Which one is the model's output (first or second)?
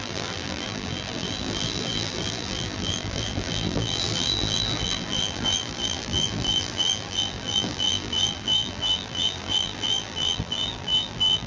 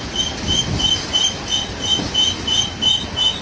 first